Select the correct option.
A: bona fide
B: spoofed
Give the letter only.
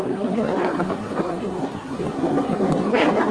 B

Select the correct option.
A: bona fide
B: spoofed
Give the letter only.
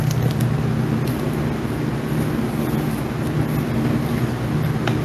A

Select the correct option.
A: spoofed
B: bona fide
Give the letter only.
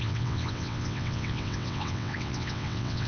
A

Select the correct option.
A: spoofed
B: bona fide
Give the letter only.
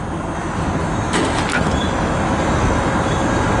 B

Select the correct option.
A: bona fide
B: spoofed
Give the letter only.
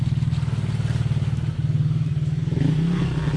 A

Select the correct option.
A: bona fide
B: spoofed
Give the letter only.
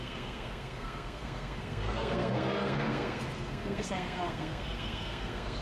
B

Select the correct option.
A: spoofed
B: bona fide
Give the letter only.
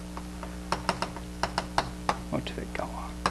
B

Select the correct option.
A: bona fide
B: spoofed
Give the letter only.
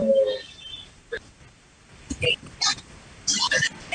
A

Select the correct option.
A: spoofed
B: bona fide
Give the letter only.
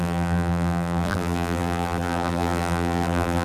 A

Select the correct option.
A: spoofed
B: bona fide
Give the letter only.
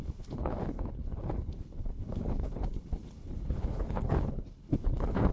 A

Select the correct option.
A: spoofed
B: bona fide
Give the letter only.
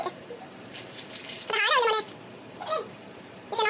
A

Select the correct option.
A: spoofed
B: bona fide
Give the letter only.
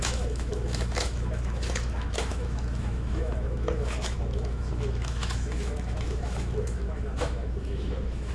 A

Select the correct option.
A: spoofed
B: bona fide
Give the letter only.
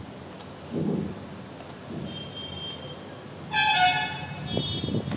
B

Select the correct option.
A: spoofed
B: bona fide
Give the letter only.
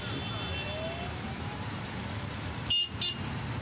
B